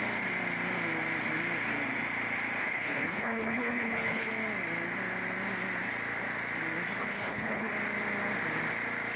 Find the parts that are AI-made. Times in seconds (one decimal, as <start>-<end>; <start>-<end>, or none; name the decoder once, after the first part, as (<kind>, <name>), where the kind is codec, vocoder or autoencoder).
2.6-4.3 (codec, HILCodec); 7.0-7.7